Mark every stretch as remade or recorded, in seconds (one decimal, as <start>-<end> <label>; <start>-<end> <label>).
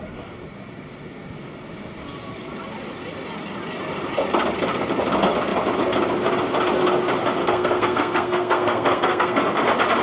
0.0-7.4 recorded; 7.4-9.5 remade; 9.5-10.0 recorded